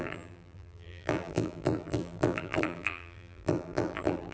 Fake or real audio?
fake